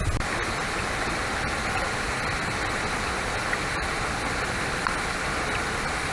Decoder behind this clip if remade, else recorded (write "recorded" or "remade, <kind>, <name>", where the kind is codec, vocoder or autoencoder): recorded